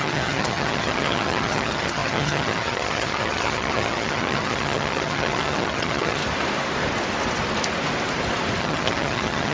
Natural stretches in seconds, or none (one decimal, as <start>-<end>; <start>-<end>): 6.2-8.6